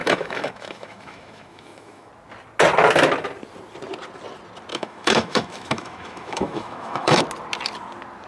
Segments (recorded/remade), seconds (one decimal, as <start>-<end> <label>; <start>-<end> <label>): 0.0-2.1 remade; 2.1-4.7 recorded; 4.7-7.2 remade; 7.2-8.3 recorded